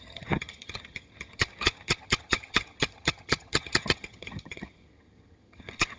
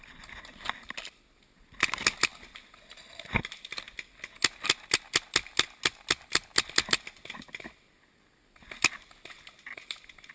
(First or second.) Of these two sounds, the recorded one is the second